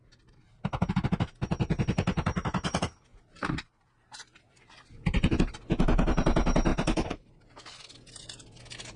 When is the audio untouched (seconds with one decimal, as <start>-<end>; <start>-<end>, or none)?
0.0-3.1; 4.5-6.7; 7.6-9.0